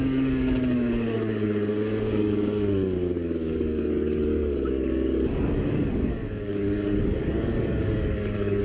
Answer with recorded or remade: remade